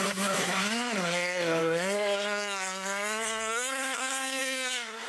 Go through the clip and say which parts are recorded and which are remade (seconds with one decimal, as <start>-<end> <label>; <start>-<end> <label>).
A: 0.0-5.1 remade